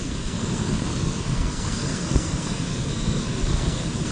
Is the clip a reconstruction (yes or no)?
yes